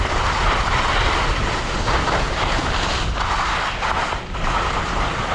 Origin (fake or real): real